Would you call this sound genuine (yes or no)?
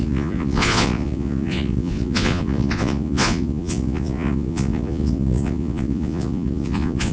no